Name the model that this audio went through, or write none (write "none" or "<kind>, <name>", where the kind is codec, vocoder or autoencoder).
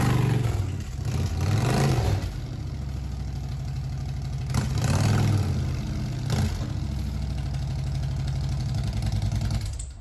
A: none